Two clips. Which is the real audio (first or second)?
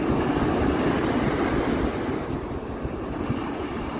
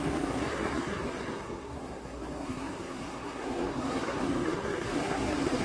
first